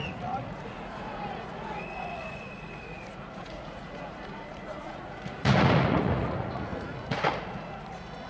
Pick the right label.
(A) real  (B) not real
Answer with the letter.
B